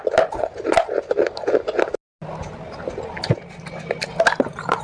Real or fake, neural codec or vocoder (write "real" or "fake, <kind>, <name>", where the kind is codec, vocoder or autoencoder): real